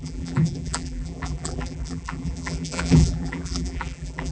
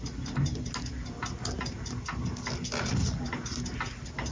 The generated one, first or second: first